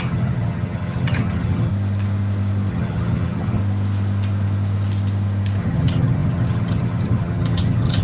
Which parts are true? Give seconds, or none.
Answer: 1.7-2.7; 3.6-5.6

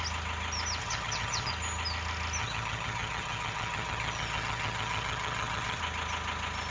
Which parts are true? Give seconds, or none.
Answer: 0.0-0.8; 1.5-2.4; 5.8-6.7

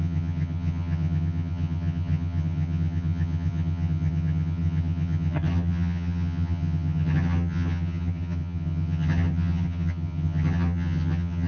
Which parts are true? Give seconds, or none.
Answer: none